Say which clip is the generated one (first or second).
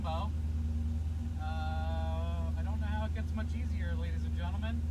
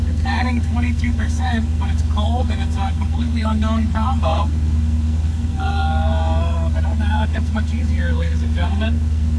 second